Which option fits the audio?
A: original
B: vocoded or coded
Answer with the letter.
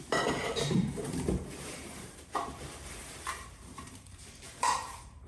B